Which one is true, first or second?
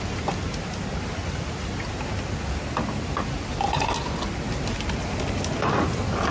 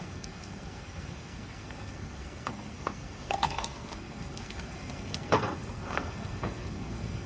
first